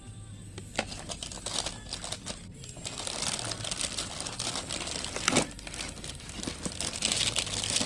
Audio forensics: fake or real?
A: real